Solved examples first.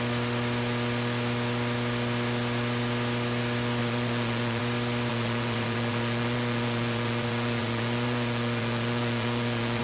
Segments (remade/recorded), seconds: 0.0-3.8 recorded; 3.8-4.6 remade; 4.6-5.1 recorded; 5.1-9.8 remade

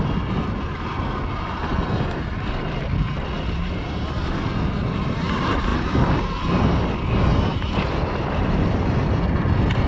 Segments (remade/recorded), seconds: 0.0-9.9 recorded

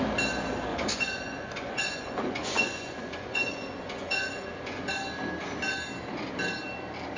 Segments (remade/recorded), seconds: 0.0-0.7 recorded; 0.7-4.9 remade; 4.9-7.2 recorded

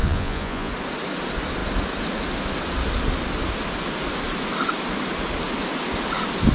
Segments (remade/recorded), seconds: 0.0-0.7 remade; 0.7-6.5 recorded

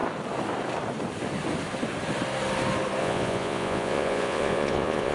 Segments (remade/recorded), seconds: 0.0-3.0 recorded; 3.0-5.1 remade